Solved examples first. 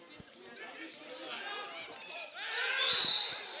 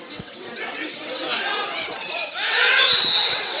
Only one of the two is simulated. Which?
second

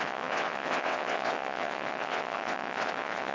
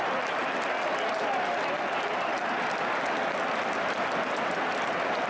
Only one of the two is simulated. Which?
first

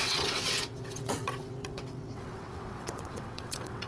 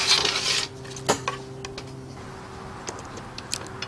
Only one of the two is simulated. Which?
first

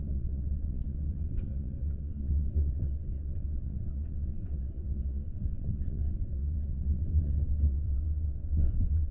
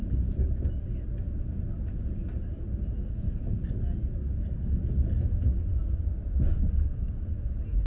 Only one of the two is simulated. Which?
first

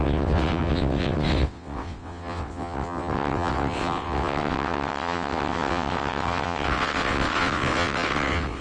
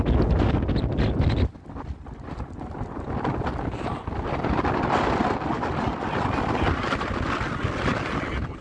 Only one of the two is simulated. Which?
first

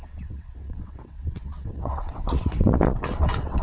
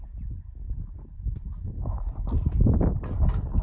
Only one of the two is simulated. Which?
first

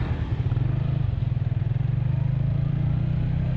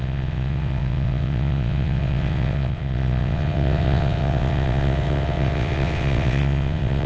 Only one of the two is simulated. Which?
second